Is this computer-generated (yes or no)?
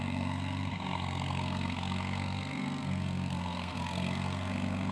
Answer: yes